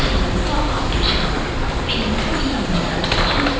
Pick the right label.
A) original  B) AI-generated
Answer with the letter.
A